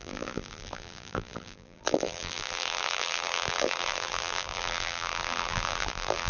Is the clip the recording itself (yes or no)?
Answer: no